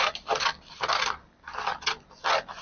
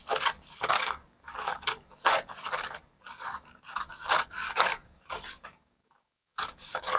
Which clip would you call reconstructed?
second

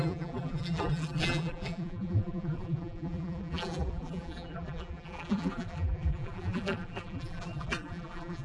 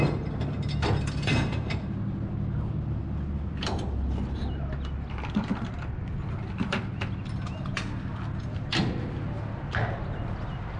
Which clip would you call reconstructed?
first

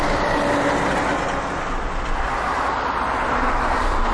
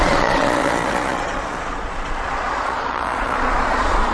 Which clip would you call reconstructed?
second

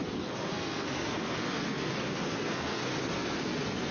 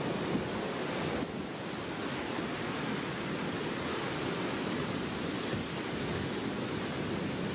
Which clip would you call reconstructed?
first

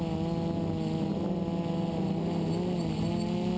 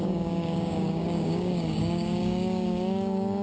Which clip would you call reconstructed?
second